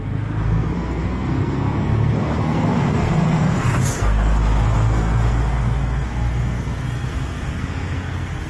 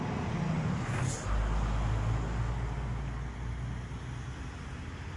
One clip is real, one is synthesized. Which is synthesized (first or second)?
first